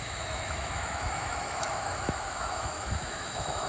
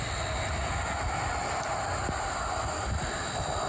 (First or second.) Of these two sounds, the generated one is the first